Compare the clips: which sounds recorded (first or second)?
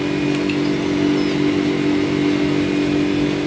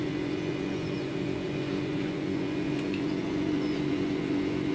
first